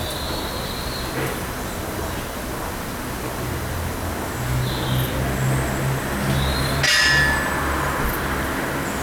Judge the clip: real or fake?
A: real